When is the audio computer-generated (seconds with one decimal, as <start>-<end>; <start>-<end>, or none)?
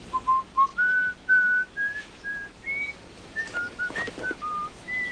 0.0-5.1